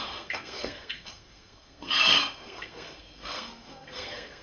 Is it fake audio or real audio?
fake